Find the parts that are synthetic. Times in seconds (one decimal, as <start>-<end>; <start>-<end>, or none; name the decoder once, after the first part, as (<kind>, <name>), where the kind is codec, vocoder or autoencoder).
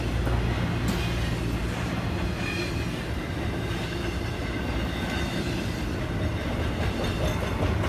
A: none